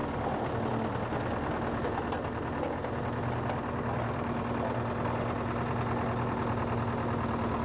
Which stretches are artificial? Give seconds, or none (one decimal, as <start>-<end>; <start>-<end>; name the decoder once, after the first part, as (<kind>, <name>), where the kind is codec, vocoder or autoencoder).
none